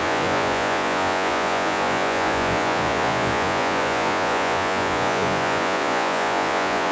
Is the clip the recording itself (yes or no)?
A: no